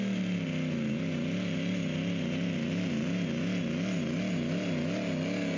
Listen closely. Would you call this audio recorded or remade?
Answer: recorded